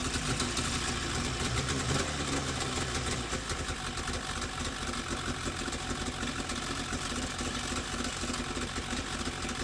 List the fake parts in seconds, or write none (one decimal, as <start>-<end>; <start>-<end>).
none